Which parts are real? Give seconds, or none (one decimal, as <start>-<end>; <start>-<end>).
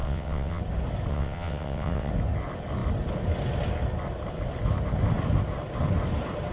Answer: 0.6-1.1; 2.1-6.5